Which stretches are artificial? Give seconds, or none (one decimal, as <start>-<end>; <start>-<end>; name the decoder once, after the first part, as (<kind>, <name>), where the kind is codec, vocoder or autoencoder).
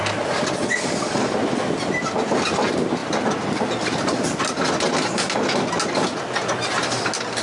none